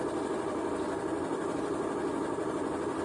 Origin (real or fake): real